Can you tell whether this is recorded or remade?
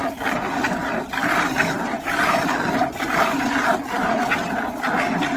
recorded